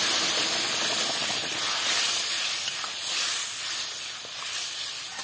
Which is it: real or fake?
real